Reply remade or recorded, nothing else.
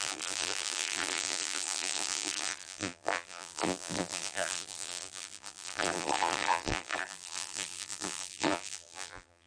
remade